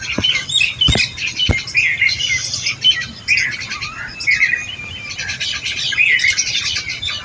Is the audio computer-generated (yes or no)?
no